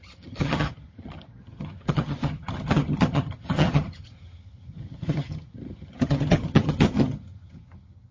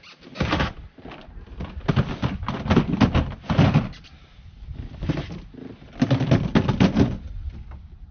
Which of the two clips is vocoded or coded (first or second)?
first